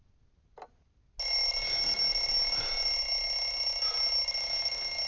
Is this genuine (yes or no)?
yes